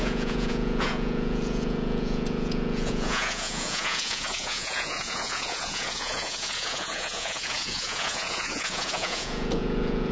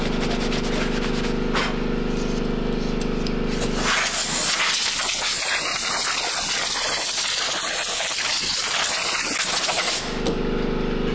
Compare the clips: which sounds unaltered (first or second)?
second